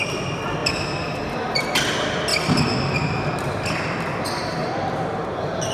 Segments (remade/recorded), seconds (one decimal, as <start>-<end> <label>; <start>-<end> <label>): 0.0-0.6 recorded; 0.6-1.7 remade; 1.7-5.7 recorded